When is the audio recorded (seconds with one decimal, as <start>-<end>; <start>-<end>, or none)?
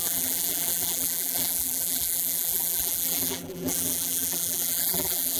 none